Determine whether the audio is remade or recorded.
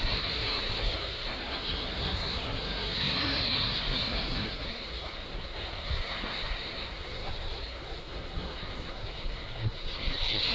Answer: remade